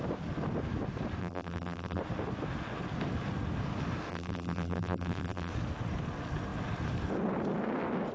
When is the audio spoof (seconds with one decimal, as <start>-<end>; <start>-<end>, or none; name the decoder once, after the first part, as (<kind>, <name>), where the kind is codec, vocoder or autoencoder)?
1.2-2.0 (vocoder, BigVGAN v2); 4.1-5.5